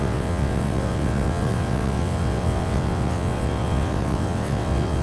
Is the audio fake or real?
fake